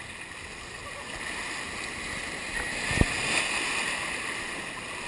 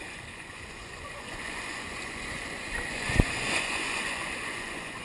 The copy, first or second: second